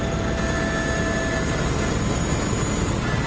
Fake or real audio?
real